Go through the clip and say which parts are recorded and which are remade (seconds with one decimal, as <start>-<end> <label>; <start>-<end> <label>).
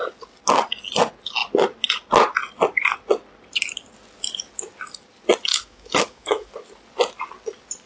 0.0-5.5 recorded; 5.5-6.5 remade; 6.5-7.9 recorded